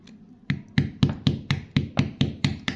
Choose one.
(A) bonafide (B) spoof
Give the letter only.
A